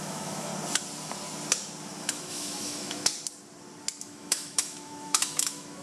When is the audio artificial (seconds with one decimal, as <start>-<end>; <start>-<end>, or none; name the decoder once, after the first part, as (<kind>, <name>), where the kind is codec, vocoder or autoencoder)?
0.0-0.5 (autoencoder, DAC-VAE); 2.0-3.1; 4.0-5.8